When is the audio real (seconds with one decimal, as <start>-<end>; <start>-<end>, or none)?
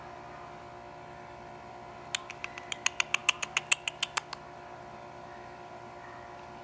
0.0-6.6